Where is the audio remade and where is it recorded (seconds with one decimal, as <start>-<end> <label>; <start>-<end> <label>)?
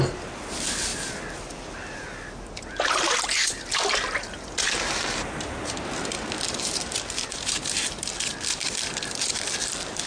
0.0-0.9 recorded; 0.9-2.4 remade; 2.4-10.1 recorded